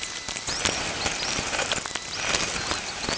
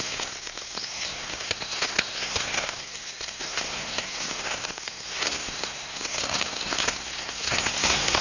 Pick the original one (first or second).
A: first